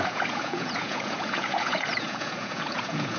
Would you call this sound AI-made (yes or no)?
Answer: yes